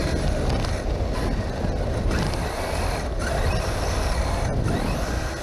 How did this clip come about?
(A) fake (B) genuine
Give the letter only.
B